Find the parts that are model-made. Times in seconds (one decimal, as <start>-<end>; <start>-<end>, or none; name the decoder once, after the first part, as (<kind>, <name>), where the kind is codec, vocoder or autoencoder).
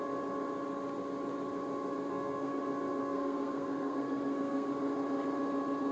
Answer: 2.1-2.6 (codec, SNAC); 3.0-4.7